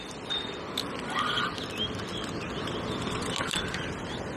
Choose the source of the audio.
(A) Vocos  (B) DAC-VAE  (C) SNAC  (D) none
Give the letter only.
D